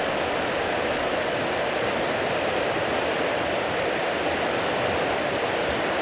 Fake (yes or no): no